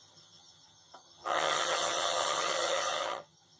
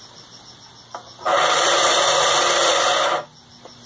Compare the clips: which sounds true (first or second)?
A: second